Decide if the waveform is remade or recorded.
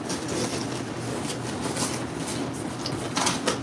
recorded